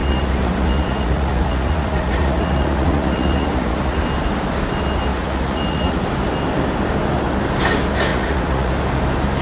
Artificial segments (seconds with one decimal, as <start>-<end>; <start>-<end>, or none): 0.0-4.0; 5.1-6.0; 8.1-8.7